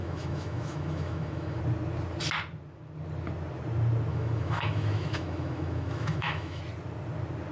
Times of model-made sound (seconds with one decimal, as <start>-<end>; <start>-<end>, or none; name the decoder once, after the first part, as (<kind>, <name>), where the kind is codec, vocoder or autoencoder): 0.0-1.6 (autoencoder, DAC-VAE); 4.1-6.6